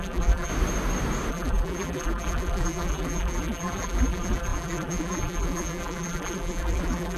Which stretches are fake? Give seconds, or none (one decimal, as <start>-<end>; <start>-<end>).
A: 0.0-0.5; 1.3-7.2